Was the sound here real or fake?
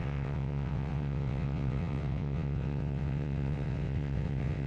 fake